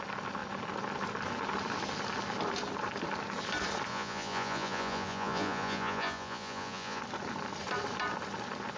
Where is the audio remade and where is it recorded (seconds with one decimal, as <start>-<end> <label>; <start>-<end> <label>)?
0.0-3.9 recorded; 3.9-7.0 remade; 7.0-8.8 recorded